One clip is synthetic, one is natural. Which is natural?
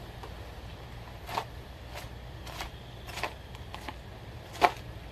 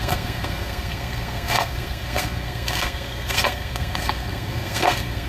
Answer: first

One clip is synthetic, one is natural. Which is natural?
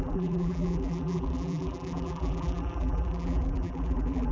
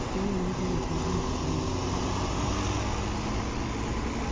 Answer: second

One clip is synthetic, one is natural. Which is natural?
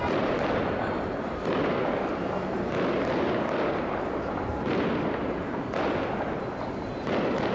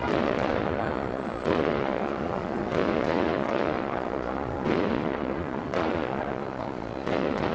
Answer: first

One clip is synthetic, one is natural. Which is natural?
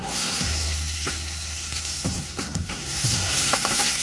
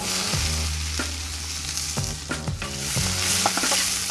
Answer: second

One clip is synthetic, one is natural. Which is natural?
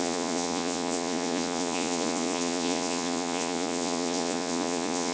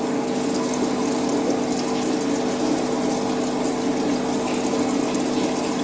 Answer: second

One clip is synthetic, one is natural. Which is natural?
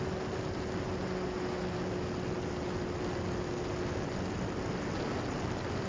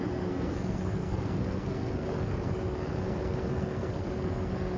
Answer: first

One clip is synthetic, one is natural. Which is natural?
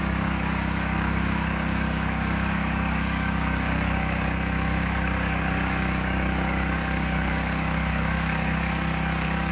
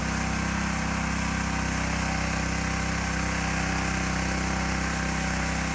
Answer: second